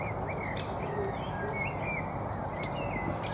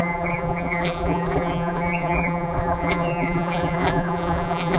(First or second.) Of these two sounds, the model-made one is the second